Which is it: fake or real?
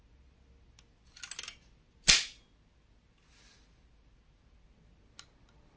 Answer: real